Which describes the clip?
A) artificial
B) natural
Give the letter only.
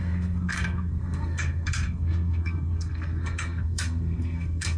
A